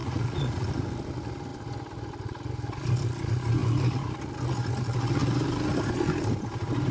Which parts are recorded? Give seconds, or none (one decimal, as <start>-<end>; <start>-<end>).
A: 0.7-6.9